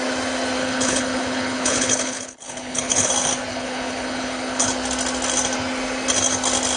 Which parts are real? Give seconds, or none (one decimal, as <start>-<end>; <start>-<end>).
0.0-0.6; 3.1-3.5; 4.7-6.8